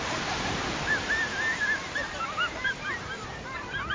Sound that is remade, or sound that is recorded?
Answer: remade